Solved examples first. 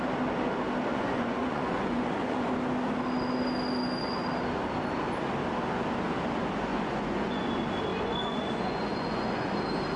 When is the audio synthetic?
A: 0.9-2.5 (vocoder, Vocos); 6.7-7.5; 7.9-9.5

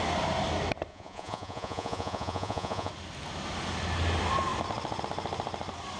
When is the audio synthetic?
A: 0.9-2.9 (vocoder, Vocos)

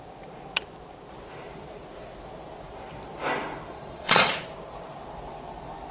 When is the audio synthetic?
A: 3.7-4.3 (vocoder, Vocos)

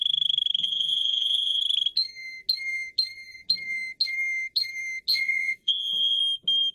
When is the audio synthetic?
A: 0.6-1.6 (vocoder, Vocos); 5.1-6.2

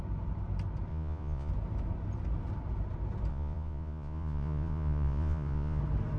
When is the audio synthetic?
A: 0.9-1.5 (vocoder, Vocos); 3.3-5.8

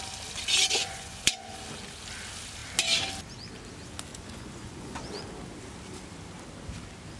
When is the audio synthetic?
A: 0.8-1.6 (vocoder, Vocos); 4.1-5.0

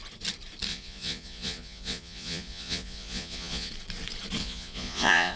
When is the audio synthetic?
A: 0.7-3.7 (vocoder, Vocos); 4.4-5.4

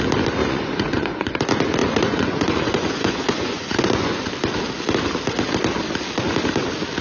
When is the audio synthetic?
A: 0.4-1.4 (vocoder, Vocos); 1.8-4.3